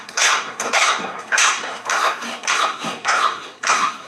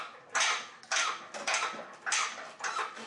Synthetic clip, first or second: first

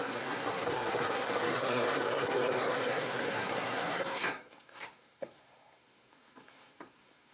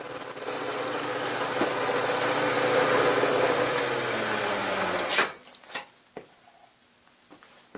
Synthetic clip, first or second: first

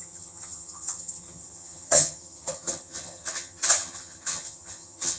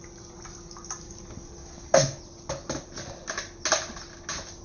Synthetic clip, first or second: first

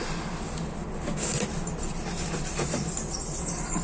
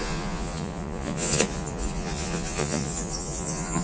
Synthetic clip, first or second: second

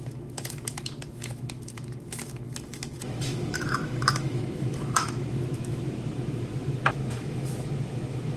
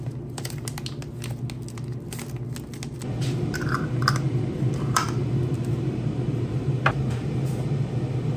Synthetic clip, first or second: first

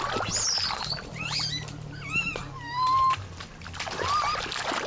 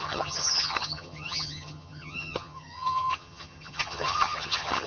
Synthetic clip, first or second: second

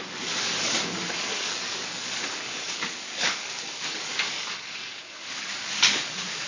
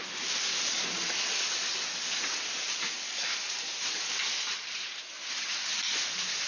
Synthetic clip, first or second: first